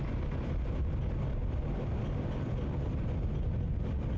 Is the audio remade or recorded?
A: recorded